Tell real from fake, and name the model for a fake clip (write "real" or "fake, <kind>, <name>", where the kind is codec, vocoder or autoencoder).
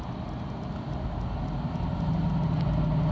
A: real